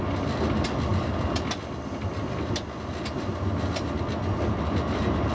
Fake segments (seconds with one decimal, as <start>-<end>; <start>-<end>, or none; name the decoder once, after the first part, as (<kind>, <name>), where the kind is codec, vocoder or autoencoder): none